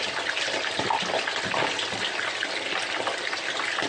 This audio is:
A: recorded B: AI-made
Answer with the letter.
A